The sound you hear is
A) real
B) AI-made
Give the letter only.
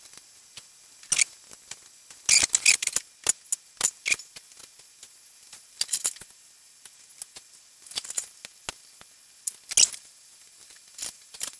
A